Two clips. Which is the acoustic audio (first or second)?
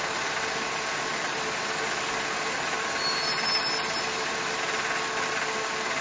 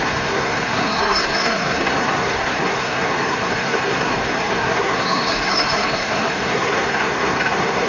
first